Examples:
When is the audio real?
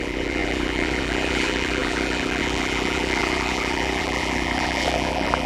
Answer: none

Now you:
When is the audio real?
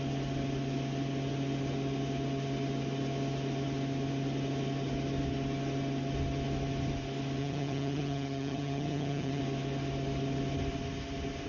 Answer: 0.0-7.4; 9.4-11.5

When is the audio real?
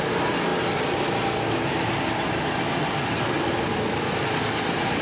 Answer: 0.0-5.0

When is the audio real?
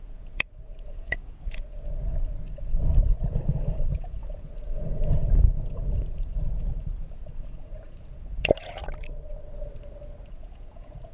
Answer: 2.0-2.5; 8.8-10.3